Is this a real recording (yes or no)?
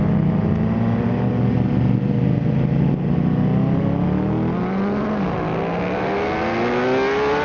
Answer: yes